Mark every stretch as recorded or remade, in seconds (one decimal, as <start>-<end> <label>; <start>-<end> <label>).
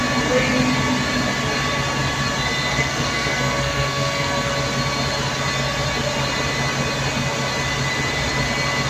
0.0-2.7 recorded; 2.7-4.5 remade; 4.5-8.9 recorded